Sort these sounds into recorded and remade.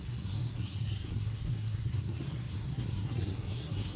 remade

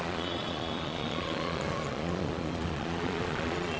remade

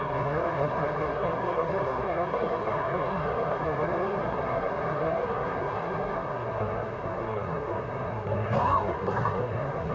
remade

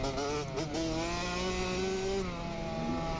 recorded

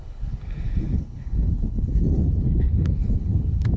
remade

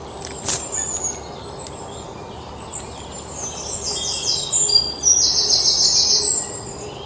recorded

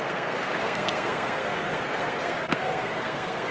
remade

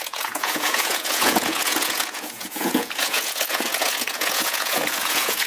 remade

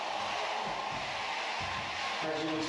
recorded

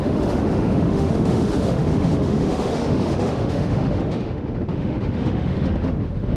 remade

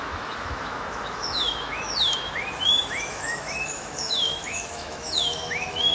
remade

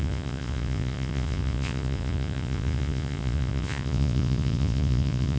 remade